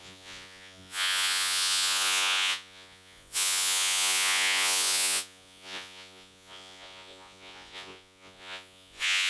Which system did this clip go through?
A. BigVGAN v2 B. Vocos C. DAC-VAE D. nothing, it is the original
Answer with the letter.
B